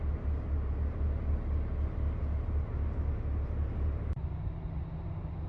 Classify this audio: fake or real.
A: real